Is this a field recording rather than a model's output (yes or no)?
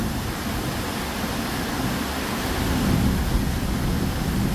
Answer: yes